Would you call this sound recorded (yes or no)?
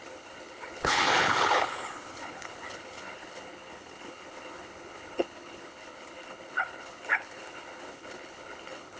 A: no